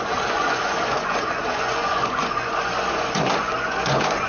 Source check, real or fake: fake